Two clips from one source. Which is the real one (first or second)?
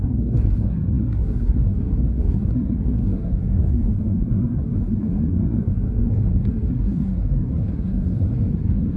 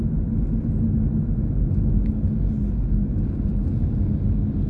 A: second